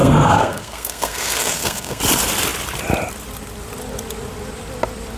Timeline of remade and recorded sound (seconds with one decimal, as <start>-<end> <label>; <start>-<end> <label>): 0.0-2.0 remade; 2.0-5.2 recorded